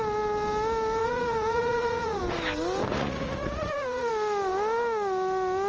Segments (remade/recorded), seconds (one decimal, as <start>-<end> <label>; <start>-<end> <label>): 0.0-1.0 recorded; 1.0-2.2 remade; 2.2-2.9 recorded; 2.9-4.1 remade; 4.1-5.7 recorded